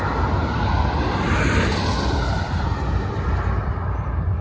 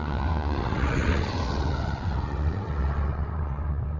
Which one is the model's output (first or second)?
second